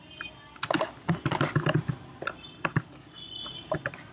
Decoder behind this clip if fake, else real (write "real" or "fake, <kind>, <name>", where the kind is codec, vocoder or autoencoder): real